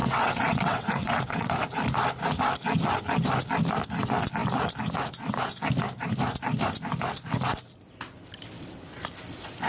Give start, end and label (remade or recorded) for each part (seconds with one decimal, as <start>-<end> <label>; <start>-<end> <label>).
0.0-1.5 remade; 1.5-9.7 recorded